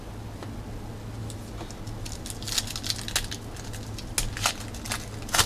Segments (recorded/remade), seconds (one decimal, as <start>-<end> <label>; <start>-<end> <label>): 0.0-5.5 recorded